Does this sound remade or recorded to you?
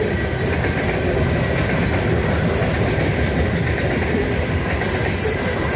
recorded